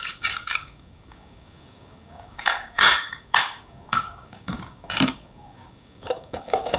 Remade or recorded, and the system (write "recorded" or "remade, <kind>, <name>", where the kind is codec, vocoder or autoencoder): remade, codec, DAC